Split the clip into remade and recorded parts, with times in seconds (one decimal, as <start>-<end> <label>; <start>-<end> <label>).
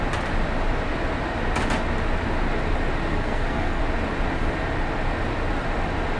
0.0-3.1 recorded; 3.1-3.8 remade; 3.8-6.2 recorded